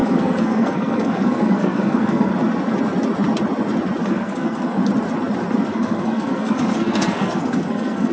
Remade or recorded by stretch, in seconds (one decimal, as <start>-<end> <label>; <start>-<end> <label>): 0.0-2.3 remade; 2.3-4.0 recorded; 4.0-4.8 remade; 4.8-5.7 recorded; 5.7-8.1 remade

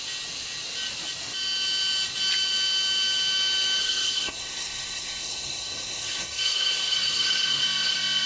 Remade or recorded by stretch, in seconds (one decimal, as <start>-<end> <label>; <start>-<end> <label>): 0.0-3.8 recorded; 3.8-8.3 remade

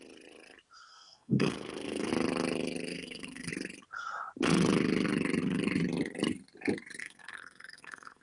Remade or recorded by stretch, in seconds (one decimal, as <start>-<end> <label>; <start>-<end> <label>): 0.0-0.9 recorded; 0.9-2.1 remade; 2.1-2.9 recorded; 2.9-3.5 remade; 3.5-7.0 recorded; 7.0-8.2 remade

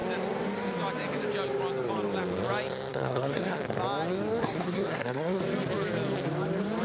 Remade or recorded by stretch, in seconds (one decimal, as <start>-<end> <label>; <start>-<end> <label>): 0.0-2.9 recorded; 2.9-3.6 remade; 3.6-4.4 recorded; 4.4-5.4 remade; 5.4-6.8 recorded

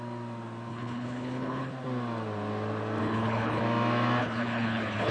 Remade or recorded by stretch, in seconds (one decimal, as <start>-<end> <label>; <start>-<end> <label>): 0.0-0.7 recorded; 0.7-1.7 remade; 1.7-3.0 recorded; 3.0-3.6 remade; 3.6-4.2 recorded; 4.2-5.1 remade

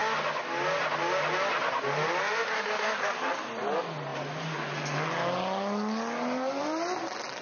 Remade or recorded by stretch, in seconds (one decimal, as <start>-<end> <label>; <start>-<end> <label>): 0.0-7.4 recorded